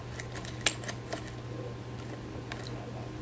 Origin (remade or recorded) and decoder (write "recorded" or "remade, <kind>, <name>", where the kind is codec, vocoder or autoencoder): recorded